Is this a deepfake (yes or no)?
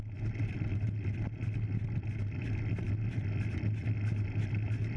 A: no